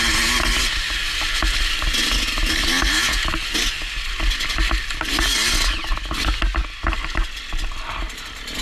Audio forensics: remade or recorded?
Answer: recorded